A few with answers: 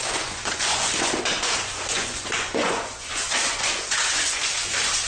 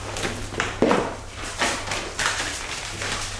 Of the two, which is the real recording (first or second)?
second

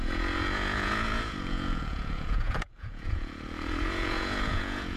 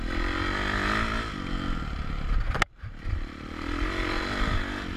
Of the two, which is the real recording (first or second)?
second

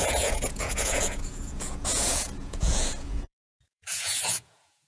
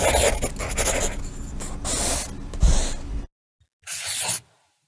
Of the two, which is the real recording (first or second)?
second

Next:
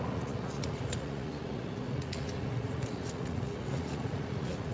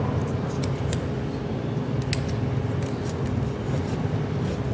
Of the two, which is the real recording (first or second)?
second